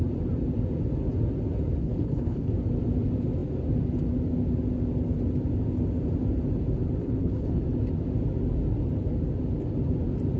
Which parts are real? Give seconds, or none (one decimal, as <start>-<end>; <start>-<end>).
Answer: 0.0-1.8; 2.5-7.0; 7.6-10.4